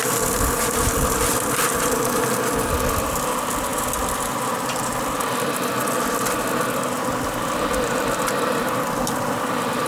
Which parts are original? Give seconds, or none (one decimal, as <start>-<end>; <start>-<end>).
0.0-9.9